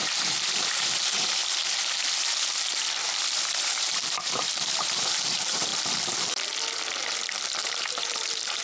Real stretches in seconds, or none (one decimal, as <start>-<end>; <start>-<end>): 1.4-3.4; 5.7-7.6